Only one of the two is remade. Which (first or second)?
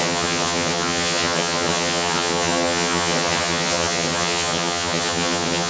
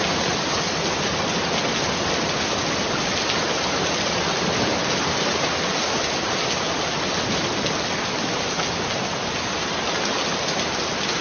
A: first